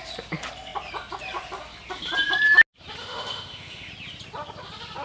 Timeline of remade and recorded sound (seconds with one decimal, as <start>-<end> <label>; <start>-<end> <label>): 0.0-3.0 recorded; 3.0-3.9 remade; 3.9-5.0 recorded

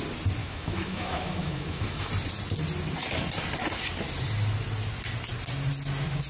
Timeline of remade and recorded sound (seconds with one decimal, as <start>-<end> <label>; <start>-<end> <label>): 0.0-0.4 recorded; 0.4-2.1 remade; 2.1-6.3 recorded

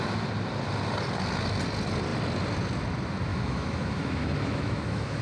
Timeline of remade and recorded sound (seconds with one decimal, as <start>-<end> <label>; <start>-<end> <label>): 0.0-3.3 recorded; 3.3-5.2 remade